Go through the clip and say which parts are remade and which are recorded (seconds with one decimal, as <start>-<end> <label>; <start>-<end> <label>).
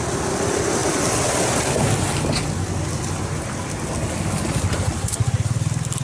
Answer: 0.0-6.0 recorded